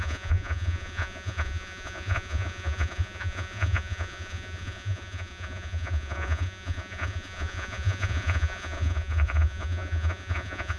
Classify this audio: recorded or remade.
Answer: remade